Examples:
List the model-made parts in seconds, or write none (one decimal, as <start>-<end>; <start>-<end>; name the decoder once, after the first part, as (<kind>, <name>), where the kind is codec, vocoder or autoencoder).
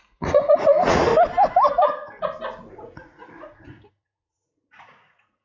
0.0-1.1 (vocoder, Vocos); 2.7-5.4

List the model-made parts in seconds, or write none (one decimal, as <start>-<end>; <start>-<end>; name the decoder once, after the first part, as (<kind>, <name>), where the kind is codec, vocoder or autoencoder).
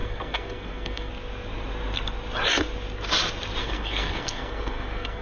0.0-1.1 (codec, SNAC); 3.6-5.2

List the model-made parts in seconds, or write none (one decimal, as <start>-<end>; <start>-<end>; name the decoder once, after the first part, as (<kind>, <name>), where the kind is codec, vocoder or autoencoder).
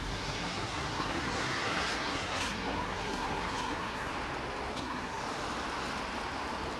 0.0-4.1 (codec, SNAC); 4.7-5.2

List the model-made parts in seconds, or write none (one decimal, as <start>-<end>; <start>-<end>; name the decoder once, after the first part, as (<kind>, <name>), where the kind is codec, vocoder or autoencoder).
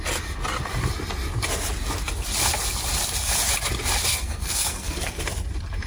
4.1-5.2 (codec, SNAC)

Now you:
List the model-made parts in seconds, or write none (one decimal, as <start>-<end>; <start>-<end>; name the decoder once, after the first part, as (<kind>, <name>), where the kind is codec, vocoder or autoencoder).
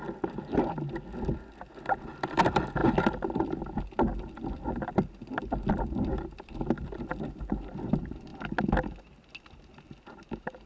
none